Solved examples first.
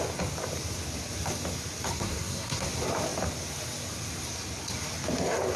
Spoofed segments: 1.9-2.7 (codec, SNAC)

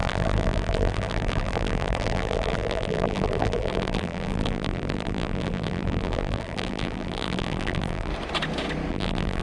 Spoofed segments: 0.0-8.1 (vocoder, BigVGAN v2); 8.9-9.4

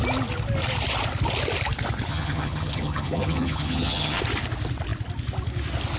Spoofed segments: 2.1-4.2 (vocoder, HiFi-GAN)